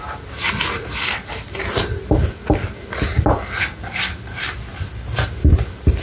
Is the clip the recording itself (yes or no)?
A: yes